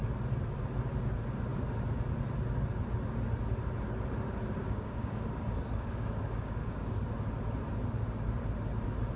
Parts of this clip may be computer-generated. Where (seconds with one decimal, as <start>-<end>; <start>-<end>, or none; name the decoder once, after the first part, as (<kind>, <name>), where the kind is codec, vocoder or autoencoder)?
4.6-7.0 (codec, DAC)